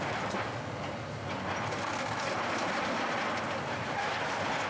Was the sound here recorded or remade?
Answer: recorded